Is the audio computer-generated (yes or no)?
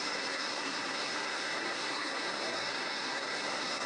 yes